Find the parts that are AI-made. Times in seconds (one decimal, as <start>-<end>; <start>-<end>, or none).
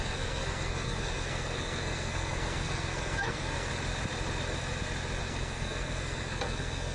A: 0.0-3.7; 5.2-6.9